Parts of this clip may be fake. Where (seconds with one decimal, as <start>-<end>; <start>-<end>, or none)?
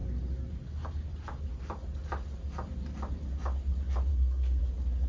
4.1-4.6